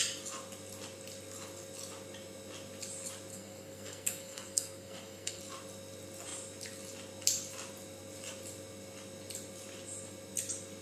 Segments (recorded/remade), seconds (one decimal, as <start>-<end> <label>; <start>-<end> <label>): 0.0-3.3 recorded; 3.3-5.4 remade; 5.4-10.8 recorded